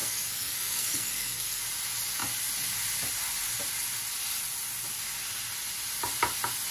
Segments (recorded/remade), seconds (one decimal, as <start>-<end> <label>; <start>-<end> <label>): 0.0-1.6 remade; 1.6-6.7 recorded